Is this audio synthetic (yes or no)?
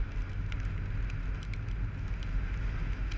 no